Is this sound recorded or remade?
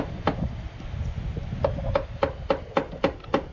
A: recorded